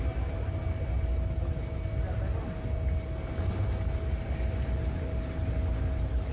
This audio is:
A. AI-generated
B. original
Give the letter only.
B